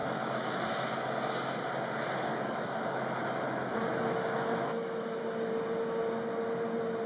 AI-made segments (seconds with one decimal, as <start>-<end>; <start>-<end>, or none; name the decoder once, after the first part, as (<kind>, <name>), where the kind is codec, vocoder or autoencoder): 0.0-0.8 (autoencoder, DAC-VAE); 2.3-5.2